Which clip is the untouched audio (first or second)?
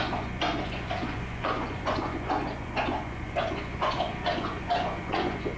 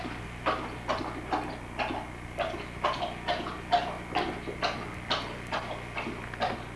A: second